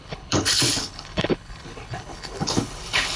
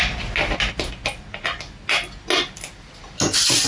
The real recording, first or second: second